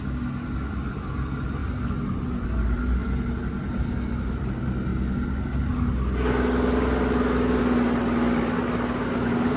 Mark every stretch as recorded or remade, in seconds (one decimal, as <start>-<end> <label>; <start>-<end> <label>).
0.0-9.6 recorded